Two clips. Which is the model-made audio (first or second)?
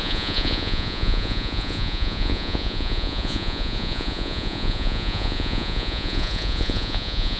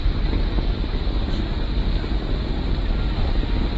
first